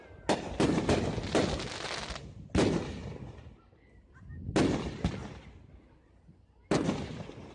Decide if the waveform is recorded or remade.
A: recorded